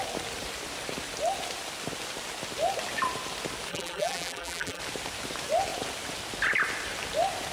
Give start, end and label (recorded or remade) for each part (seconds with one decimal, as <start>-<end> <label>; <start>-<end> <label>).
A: 0.0-3.7 recorded; 3.7-4.8 remade; 4.8-7.5 recorded